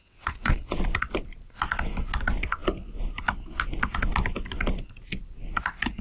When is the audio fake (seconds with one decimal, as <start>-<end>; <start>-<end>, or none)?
0.0-0.8

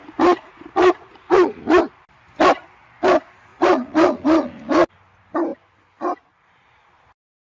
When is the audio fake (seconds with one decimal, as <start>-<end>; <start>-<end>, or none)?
0.0-1.8; 3.5-4.9

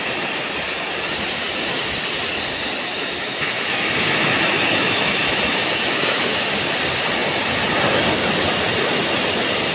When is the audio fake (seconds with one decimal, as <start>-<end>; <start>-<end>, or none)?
2.9-6.6

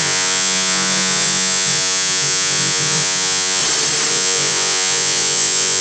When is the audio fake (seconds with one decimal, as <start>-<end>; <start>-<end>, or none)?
0.0-3.6; 4.1-5.8

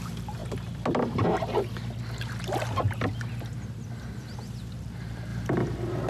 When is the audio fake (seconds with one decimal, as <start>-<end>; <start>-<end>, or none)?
none